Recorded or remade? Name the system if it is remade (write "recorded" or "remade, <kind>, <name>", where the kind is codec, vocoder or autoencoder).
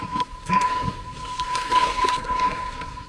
remade, codec, SNAC